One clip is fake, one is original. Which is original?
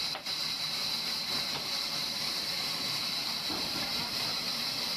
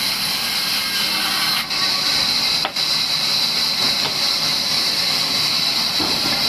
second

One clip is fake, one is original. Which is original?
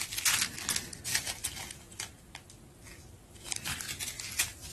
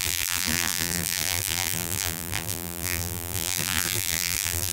first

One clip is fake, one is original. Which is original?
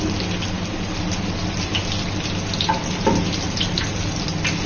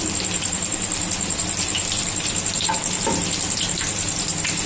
first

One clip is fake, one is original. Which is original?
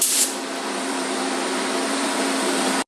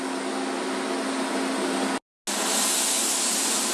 second